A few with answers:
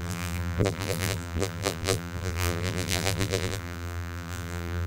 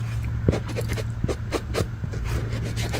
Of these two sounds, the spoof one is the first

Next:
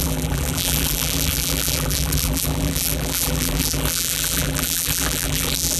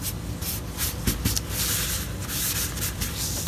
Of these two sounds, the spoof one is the first